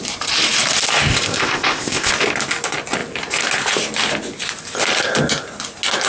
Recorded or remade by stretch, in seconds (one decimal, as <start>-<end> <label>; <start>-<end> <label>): 0.0-1.1 recorded; 1.1-2.1 remade; 2.1-6.1 recorded